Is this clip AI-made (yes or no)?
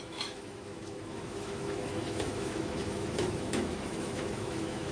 yes